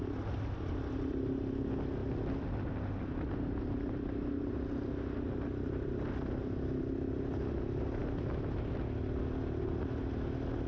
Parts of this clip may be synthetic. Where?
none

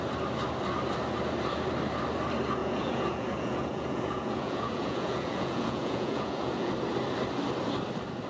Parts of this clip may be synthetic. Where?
2.6-6.7 (vocoder, Vocos)

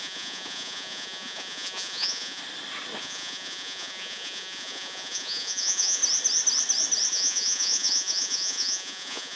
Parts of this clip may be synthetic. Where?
0.0-2.4 (vocoder, Vocos); 3.0-6.0; 7.1-9.4

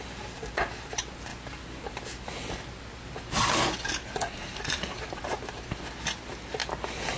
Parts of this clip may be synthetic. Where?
4.3-5.0 (vocoder, Vocos)

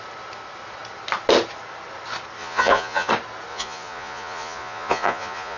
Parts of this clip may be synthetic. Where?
2.4-3.1 (vocoder, Vocos); 3.5-5.6

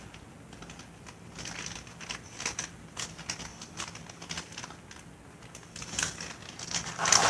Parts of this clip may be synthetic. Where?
none

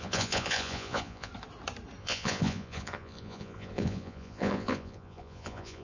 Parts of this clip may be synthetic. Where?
0.0-1.3 (vocoder, Vocos); 2.0-5.8